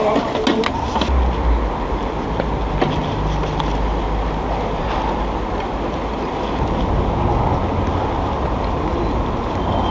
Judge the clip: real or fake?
real